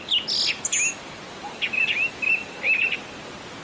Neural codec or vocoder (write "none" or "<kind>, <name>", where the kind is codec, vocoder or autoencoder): none